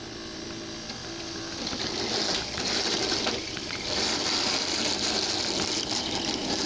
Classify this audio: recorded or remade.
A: remade